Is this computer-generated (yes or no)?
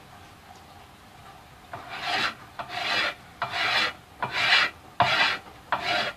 no